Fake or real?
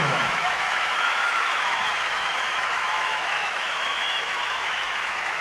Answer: fake